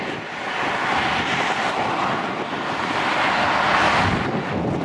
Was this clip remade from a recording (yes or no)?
no